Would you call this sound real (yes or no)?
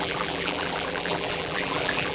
no